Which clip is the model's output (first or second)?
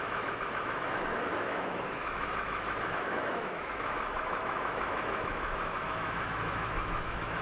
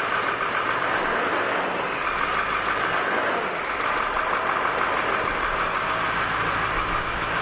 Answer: first